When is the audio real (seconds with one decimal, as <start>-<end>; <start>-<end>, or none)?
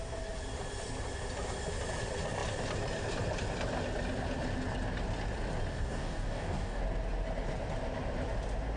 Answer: 0.0-5.7; 6.8-8.8